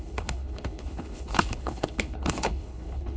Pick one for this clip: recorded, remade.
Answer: remade